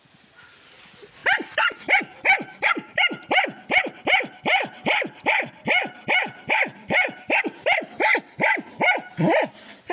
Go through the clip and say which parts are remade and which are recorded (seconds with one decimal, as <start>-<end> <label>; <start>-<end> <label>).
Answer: 0.0-4.5 recorded; 4.5-7.4 remade; 7.4-9.9 recorded